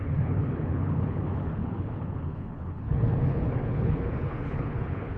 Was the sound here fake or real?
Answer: fake